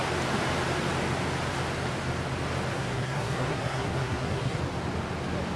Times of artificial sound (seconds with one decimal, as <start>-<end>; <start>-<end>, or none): 2.7-4.6